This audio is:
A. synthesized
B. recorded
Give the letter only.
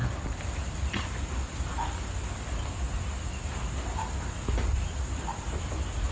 B